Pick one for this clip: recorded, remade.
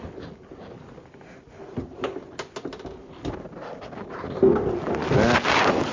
recorded